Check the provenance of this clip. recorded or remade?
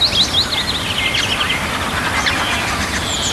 recorded